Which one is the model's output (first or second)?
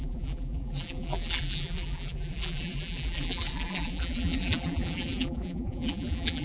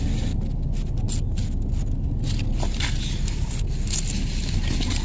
first